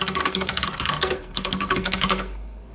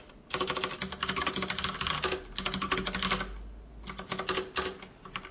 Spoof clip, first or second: first